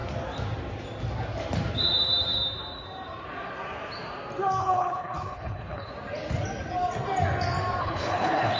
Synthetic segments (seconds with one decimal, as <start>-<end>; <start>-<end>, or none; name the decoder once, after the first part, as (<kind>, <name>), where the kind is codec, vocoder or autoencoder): 4.6-5.9 (codec, HILCodec); 7.8-8.6